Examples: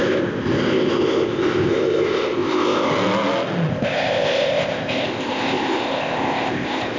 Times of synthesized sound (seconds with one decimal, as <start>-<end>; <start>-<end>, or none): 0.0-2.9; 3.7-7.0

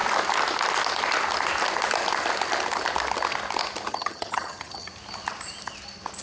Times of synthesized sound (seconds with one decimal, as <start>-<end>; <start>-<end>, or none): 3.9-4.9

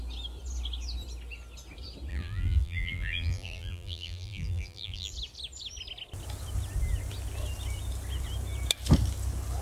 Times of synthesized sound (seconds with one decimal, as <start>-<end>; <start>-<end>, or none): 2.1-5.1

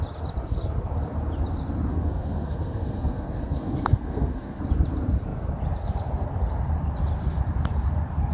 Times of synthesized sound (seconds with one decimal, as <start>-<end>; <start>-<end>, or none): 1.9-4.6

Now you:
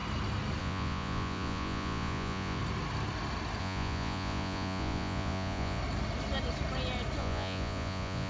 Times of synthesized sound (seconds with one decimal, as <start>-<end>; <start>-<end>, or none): 0.6-2.6; 3.6-5.8; 7.2-8.3

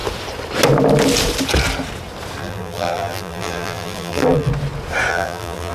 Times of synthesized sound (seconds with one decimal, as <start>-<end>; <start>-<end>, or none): 2.4-4.5; 5.1-5.7

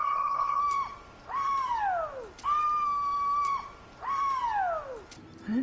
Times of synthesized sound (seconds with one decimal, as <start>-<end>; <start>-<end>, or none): 0.0-0.6

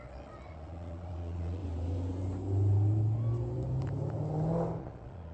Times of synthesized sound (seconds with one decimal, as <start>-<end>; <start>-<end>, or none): 0.0-1.6; 4.8-5.3